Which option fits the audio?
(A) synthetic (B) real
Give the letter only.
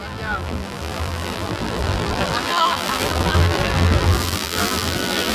A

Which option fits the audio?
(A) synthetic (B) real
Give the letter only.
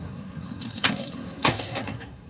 A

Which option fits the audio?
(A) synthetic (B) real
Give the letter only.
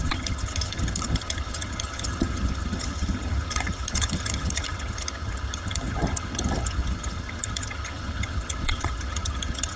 A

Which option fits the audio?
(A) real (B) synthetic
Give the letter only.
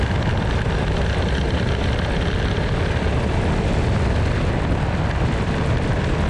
A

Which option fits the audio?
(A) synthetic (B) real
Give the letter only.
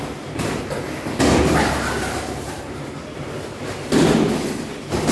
A